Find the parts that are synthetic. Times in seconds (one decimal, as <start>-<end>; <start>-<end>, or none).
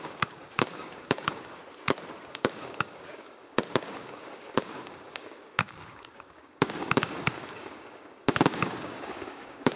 0.0-1.6; 2.3-9.8